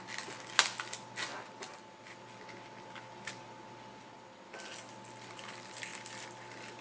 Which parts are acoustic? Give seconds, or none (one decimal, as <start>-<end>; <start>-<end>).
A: 0.0-6.8